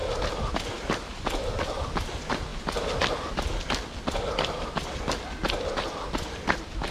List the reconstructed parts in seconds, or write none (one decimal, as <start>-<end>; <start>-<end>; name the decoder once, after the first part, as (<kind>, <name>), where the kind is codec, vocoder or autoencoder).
none